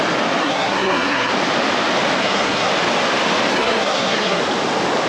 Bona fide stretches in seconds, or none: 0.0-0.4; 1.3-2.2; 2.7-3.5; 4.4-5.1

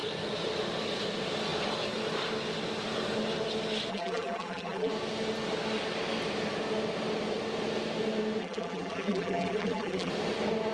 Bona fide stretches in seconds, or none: 0.0-3.9; 4.9-8.4; 10.1-10.7

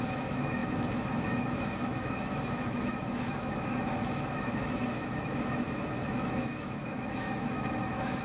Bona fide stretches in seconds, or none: none